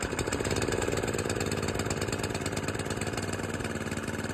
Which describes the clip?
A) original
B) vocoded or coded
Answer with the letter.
A